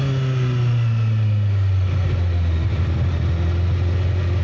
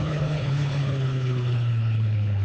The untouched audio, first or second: first